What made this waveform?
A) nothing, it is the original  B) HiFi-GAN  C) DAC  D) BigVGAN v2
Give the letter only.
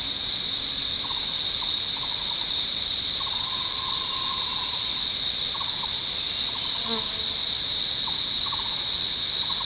A